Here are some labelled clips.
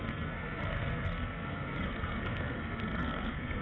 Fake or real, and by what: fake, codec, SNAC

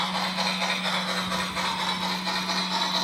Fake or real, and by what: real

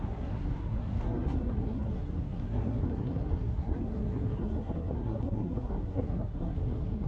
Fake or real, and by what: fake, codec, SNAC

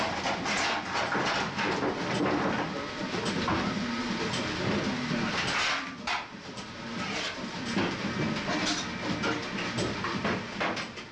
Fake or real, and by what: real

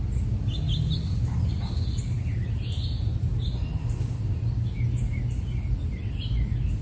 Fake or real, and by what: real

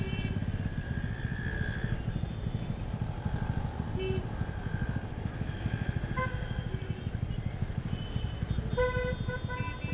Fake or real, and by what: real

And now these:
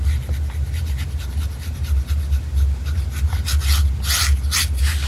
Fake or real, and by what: real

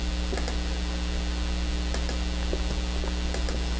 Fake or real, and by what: real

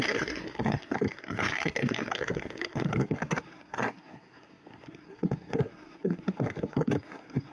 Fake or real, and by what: fake, codec, SNAC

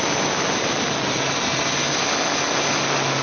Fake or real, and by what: real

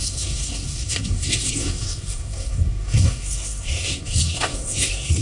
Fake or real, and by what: fake, codec, SNAC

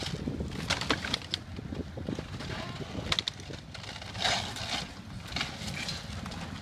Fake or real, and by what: real